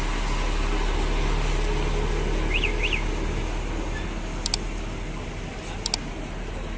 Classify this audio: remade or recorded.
recorded